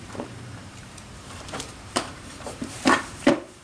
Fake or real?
fake